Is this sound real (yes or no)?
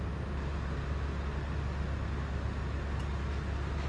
yes